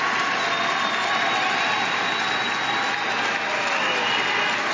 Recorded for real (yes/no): yes